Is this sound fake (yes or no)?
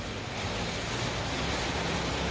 no